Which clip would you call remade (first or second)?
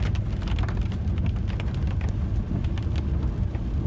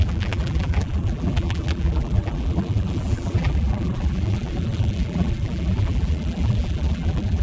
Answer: second